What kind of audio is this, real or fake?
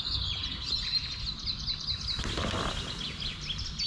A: real